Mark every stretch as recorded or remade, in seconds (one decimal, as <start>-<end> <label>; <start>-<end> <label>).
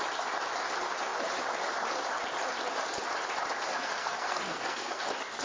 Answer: 0.0-3.7 recorded; 3.7-5.0 remade; 5.0-5.4 recorded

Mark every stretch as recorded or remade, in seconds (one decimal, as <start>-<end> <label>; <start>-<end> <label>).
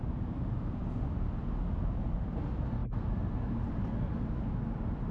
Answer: 0.0-5.1 recorded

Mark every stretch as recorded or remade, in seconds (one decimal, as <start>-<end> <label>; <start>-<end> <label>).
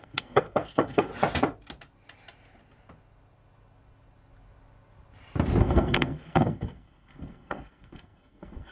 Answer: 0.0-1.1 remade; 1.1-5.6 recorded; 5.6-8.7 remade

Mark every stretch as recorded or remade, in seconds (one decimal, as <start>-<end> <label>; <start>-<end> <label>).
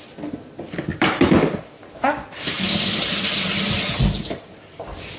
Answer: 0.0-0.9 recorded; 0.9-3.1 remade; 3.1-5.2 recorded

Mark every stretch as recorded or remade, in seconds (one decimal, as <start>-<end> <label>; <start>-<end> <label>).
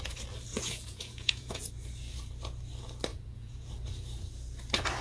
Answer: 0.0-0.5 recorded; 0.5-1.7 remade; 1.7-3.1 recorded; 3.1-3.7 remade; 3.7-5.0 recorded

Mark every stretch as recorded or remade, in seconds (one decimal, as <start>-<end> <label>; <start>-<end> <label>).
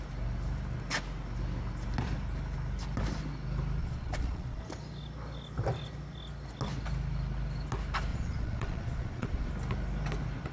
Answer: 0.0-3.8 recorded; 3.8-4.6 remade; 4.6-8.1 recorded; 8.1-9.5 remade; 9.5-10.5 recorded